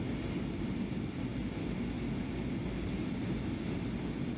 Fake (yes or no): no